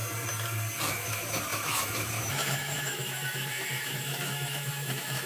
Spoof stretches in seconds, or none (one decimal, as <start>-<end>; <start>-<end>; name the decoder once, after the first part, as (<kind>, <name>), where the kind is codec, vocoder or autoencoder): 0.9-5.3 (autoencoder, DAC-VAE)